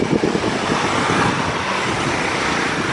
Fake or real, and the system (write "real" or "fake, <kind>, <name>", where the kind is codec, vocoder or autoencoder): real